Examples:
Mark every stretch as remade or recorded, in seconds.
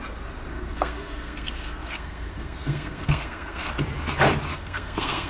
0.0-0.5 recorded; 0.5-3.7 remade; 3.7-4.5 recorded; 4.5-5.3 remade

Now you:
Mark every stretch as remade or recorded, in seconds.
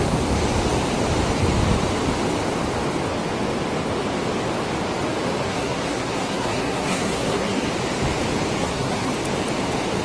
0.0-5.4 recorded; 5.4-7.7 remade; 7.7-8.6 recorded; 8.6-9.1 remade; 9.1-10.0 recorded